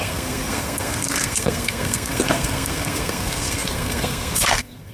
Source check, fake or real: fake